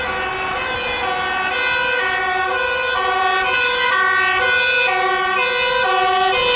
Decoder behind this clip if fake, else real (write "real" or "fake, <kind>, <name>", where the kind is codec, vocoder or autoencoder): real